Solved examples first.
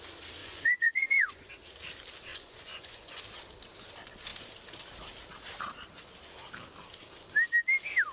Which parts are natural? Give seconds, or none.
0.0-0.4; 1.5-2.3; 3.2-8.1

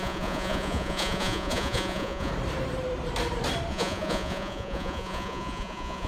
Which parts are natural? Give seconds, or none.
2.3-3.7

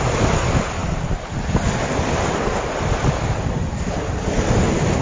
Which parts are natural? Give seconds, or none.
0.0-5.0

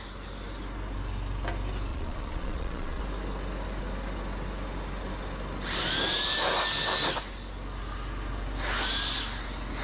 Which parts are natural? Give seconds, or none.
0.0-1.9; 3.0-9.8

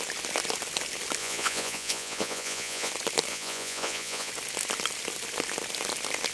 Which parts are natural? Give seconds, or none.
0.0-1.2; 2.9-3.3; 4.3-6.3

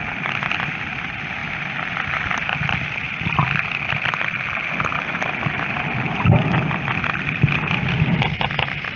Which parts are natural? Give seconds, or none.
0.0-1.4; 3.9-4.9; 6.5-9.0

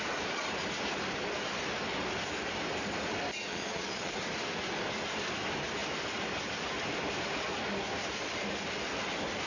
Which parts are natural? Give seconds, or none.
0.0-3.5; 4.1-9.5